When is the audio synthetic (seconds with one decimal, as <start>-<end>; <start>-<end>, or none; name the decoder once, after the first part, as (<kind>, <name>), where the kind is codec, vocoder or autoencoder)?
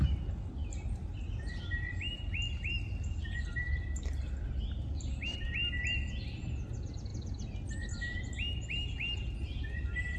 none